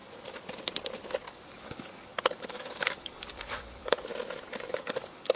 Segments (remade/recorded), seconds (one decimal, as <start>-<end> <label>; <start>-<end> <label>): 0.0-1.3 recorded; 1.3-4.1 remade; 4.1-4.7 recorded; 4.7-5.4 remade